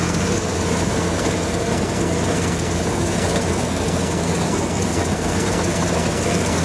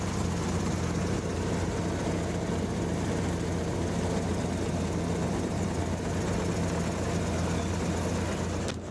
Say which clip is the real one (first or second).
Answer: second